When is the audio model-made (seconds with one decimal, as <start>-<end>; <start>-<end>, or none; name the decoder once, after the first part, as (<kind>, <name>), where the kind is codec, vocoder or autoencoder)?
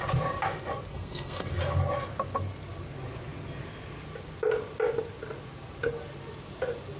0.9-1.5 (codec, SNAC)